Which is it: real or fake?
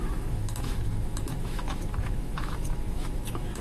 fake